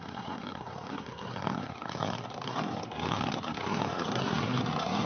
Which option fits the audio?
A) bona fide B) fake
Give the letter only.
B